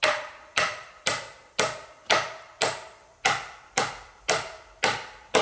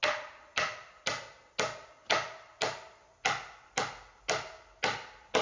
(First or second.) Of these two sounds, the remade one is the first